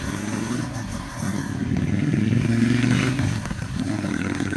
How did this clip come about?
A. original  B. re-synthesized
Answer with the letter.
B